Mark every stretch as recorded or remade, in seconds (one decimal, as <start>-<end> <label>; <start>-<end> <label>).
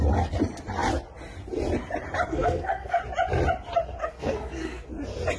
0.0-2.3 recorded; 2.3-3.0 remade; 3.0-4.0 recorded; 4.0-4.9 remade; 4.9-5.4 recorded